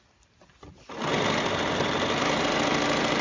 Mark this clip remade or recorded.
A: recorded